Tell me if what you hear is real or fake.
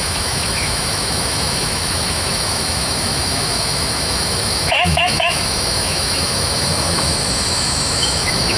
fake